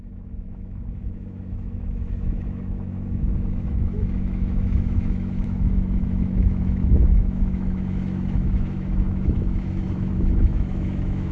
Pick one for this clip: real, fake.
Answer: fake